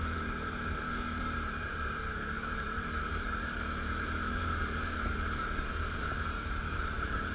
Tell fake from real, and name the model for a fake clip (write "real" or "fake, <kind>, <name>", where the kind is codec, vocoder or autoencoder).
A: fake, vocoder, BigVGAN v2